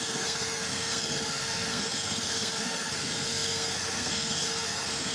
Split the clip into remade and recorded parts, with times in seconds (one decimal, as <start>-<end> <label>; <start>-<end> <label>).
0.0-5.1 remade